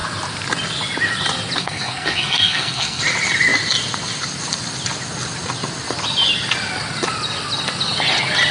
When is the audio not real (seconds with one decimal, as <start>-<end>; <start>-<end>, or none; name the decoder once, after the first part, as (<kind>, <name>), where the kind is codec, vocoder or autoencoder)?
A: 1.6-3.0 (codec, SNAC)